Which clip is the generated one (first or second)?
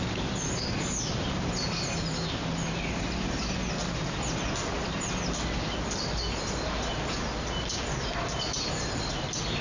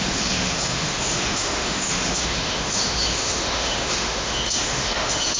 second